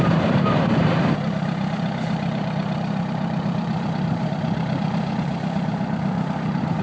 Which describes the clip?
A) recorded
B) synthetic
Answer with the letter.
B